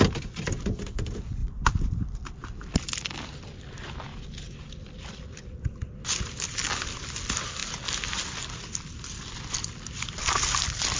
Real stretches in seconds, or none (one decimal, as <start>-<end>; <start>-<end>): 0.0-1.4; 2.0-11.0